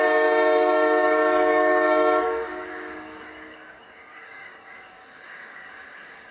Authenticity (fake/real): fake